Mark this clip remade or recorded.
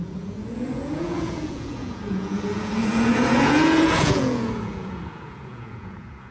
remade